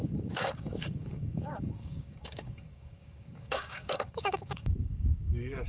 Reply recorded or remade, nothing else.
remade